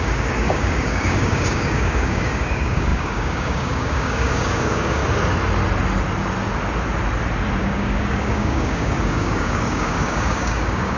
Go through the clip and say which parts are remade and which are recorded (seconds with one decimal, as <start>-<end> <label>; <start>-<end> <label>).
0.0-5.0 remade; 5.0-7.6 recorded; 7.6-11.0 remade